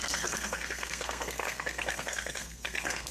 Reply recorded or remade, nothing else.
remade